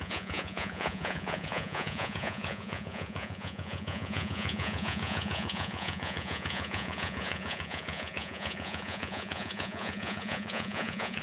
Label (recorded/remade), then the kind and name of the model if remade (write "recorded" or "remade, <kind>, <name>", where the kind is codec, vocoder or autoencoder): remade, vocoder, Vocos